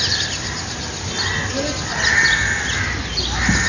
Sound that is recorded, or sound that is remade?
recorded